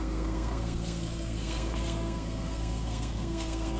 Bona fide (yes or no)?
no